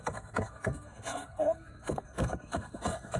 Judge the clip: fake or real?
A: fake